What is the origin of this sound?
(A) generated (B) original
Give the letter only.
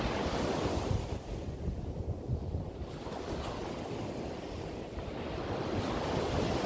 B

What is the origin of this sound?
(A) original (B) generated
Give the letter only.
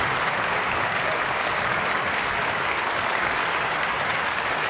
B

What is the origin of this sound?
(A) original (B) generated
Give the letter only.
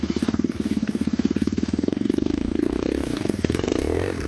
B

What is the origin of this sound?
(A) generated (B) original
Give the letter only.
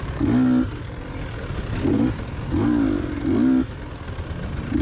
B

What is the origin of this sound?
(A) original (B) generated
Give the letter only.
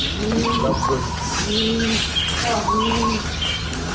A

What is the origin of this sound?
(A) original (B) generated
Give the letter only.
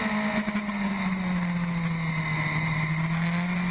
A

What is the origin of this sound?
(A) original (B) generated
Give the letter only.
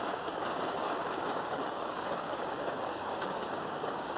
B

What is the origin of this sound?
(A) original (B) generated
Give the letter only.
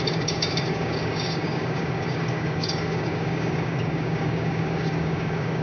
B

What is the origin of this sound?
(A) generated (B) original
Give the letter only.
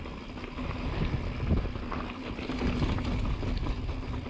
B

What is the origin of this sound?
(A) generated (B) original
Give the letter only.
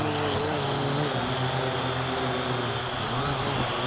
B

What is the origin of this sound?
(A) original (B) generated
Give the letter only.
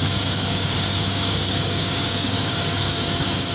B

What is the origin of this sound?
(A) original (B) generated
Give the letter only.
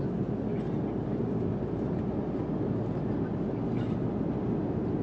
A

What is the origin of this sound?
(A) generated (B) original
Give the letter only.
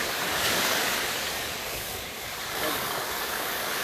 A